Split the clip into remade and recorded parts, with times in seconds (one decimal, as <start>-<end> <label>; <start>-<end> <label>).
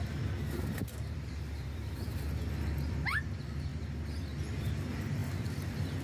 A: 0.0-2.4 remade; 2.4-2.9 recorded; 2.9-3.7 remade; 3.7-4.6 recorded; 4.6-6.0 remade